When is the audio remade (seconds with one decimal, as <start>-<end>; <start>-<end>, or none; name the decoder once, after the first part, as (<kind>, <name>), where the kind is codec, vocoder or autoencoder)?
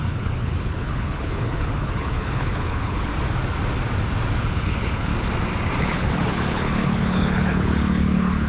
0.0-3.1 (codec, HILCodec); 4.5-5.1; 5.8-8.5